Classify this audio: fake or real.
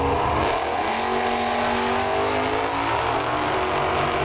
real